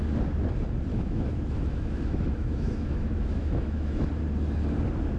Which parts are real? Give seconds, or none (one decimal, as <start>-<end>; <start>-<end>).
0.0-0.9; 4.0-5.2